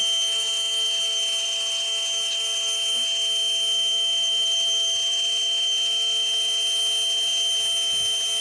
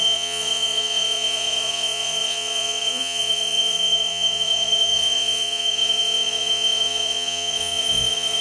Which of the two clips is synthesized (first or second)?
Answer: second